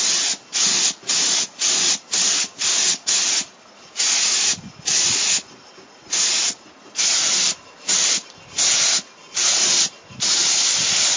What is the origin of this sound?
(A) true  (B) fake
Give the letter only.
A